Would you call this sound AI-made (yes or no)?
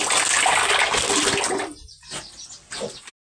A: no